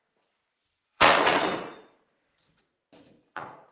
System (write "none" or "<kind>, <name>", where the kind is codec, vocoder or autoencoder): vocoder, Vocos